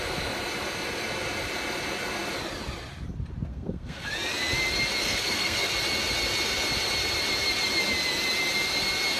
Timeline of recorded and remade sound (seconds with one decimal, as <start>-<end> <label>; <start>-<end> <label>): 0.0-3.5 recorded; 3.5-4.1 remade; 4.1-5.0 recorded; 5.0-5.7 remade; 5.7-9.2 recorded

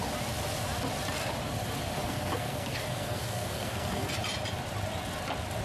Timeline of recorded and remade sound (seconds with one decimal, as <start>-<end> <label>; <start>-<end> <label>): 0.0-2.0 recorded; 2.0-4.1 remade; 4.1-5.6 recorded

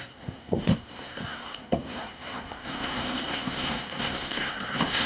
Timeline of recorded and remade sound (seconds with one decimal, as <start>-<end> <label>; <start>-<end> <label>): 0.0-5.1 remade